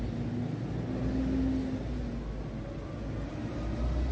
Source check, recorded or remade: recorded